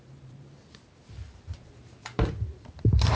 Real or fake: fake